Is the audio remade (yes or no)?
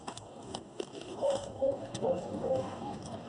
yes